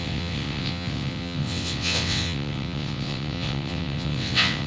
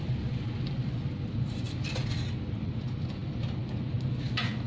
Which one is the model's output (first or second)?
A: first